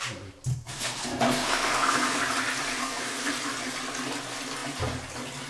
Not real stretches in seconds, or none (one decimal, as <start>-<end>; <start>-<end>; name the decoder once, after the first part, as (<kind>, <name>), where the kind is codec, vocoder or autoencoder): 0.5-2.2 (codec, SNAC); 2.8-3.3